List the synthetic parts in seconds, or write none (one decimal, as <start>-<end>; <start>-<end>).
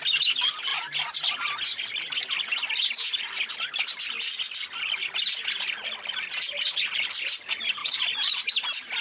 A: none